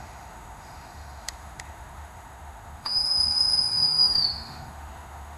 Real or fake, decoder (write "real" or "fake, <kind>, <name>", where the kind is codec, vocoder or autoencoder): fake, autoencoder, DAC-VAE